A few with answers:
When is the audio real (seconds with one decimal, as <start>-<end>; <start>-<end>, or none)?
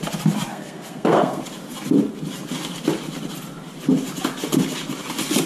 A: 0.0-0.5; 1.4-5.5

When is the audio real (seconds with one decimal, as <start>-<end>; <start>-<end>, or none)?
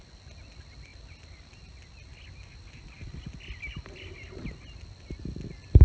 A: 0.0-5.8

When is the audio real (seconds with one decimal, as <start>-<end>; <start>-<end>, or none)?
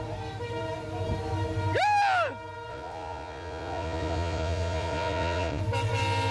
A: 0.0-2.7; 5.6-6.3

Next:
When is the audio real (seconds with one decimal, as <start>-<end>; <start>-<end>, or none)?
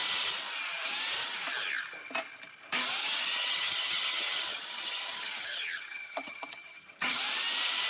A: 0.0-3.0; 7.2-7.9